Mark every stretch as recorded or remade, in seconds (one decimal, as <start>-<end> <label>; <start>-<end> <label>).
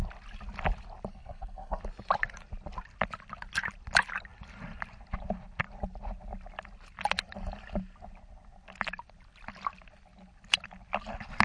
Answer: 0.0-1.1 recorded; 1.1-1.8 remade; 1.8-11.4 recorded